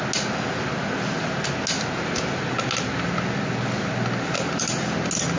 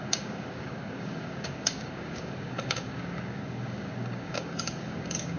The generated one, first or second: second